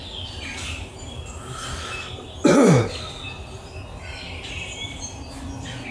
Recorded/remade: recorded